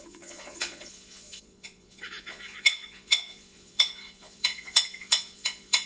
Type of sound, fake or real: fake